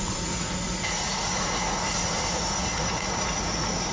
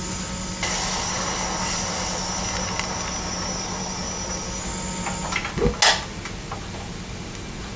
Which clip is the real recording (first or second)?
second